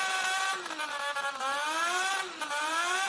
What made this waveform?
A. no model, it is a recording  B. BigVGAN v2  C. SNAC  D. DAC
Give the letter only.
B